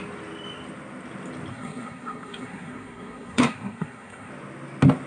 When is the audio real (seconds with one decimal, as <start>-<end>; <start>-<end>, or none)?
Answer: 0.0-1.5; 4.3-5.1